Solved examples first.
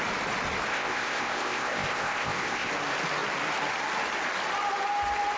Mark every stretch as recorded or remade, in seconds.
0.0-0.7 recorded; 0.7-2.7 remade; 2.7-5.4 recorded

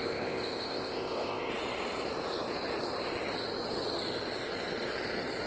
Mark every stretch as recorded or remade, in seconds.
0.0-1.5 remade; 1.5-5.5 recorded

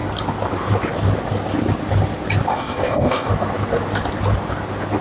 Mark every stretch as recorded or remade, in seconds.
0.0-2.5 recorded; 2.5-3.3 remade; 3.3-5.0 recorded